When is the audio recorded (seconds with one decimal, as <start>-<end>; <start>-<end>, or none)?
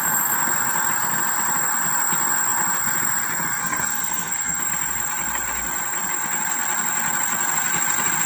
0.0-3.6; 4.6-8.3